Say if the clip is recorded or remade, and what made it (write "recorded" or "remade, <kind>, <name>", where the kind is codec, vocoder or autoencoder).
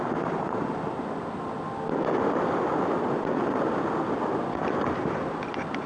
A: recorded